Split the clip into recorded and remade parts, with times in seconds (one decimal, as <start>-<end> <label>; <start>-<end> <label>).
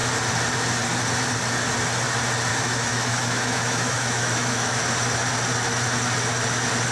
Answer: 0.0-2.5 recorded; 2.5-4.8 remade; 4.8-6.9 recorded